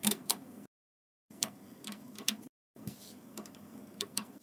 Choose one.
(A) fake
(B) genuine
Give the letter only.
A